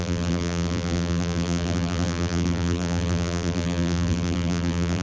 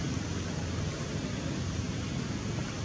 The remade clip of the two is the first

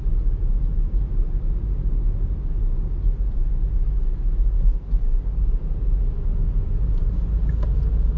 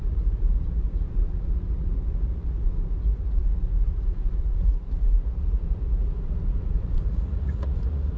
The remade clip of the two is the second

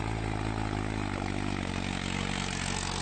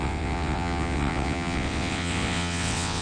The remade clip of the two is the second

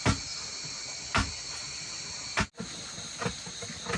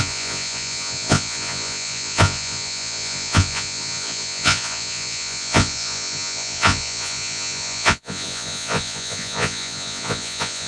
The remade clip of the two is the second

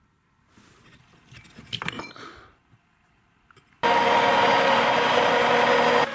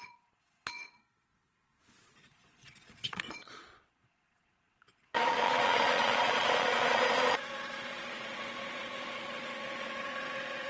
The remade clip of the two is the second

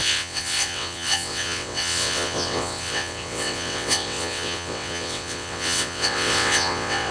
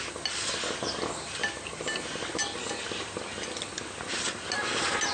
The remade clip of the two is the first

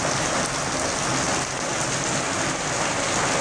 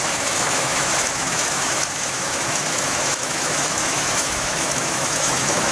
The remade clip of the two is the second